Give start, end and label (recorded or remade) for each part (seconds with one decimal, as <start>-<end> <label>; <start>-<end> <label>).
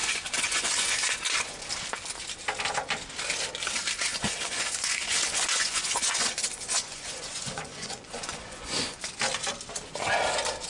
0.0-1.6 remade; 1.6-4.1 recorded; 4.1-9.0 remade; 9.0-10.7 recorded